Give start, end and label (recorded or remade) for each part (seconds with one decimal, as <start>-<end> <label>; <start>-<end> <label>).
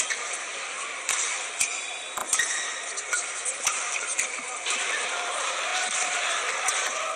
0.0-5.7 remade; 5.7-6.7 recorded; 6.7-7.2 remade